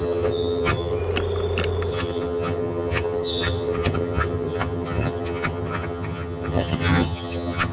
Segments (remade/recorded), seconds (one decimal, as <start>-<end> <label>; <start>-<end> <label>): 0.0-1.0 remade; 1.0-1.9 recorded; 1.9-7.7 remade

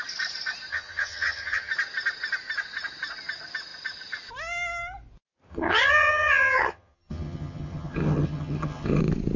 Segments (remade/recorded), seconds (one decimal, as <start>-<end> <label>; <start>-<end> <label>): 0.0-0.7 recorded; 0.7-1.7 remade; 1.7-5.5 recorded; 5.5-9.0 remade; 9.0-9.4 recorded

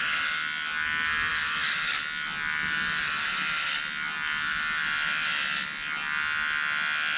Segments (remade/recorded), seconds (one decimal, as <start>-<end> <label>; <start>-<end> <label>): 0.0-7.2 recorded

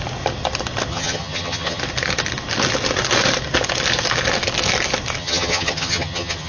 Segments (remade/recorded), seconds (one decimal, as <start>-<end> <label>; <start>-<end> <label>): 0.0-0.9 recorded; 0.9-1.8 remade; 1.8-5.2 recorded; 5.2-6.5 remade